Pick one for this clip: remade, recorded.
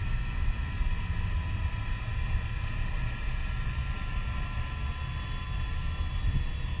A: recorded